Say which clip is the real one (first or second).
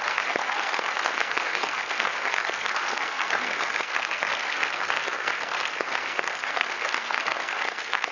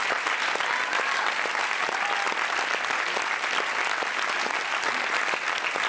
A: second